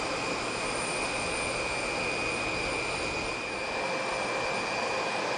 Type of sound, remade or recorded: recorded